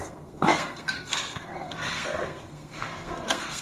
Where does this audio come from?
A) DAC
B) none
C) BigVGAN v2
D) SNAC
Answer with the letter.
D